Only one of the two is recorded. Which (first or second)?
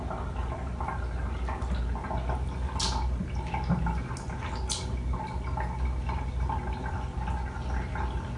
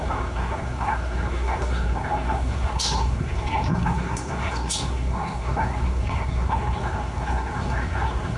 first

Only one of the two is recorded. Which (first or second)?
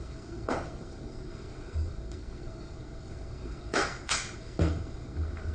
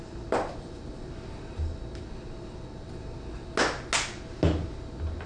second